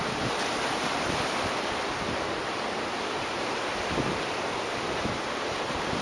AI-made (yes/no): no